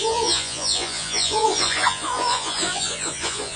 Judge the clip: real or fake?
fake